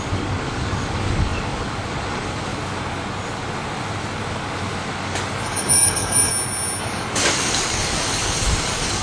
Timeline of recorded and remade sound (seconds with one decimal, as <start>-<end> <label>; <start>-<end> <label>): 0.0-2.5 remade; 2.5-4.8 recorded; 4.8-6.3 remade; 6.3-6.8 recorded; 6.8-9.0 remade